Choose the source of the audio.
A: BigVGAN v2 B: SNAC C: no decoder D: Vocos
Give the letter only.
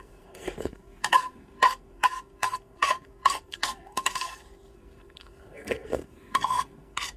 B